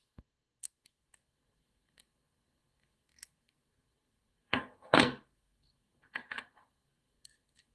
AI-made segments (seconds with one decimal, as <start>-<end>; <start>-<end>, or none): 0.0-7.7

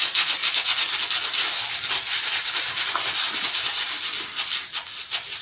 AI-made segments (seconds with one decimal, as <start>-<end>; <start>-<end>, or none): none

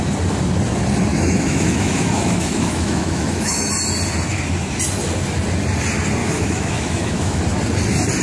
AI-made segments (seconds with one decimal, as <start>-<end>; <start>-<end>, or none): 1.1-3.7; 6.2-7.4

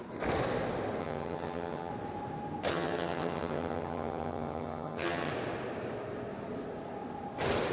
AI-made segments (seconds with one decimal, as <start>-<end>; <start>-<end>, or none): 1.0-1.9; 2.7-5.3

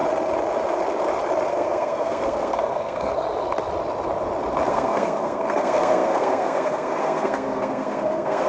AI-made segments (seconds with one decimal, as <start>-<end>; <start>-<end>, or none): 1.5-3.1; 4.7-8.5

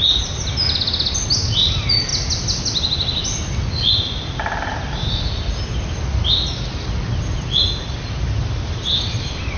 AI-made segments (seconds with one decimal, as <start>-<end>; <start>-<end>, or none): none